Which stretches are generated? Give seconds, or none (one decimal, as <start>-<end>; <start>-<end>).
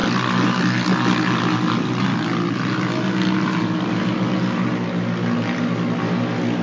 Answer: none